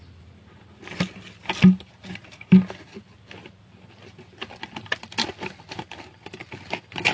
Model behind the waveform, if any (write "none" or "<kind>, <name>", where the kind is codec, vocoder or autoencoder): none